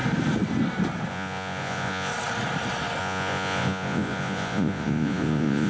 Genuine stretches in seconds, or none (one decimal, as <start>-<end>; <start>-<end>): 0.0-1.1; 2.1-3.0